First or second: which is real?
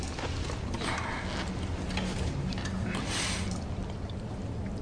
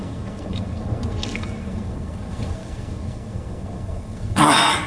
first